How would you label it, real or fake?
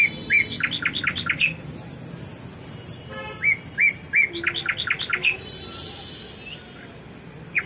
real